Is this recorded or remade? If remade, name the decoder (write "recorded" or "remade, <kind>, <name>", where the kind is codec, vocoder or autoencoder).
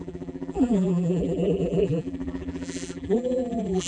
remade, vocoder, BigVGAN v2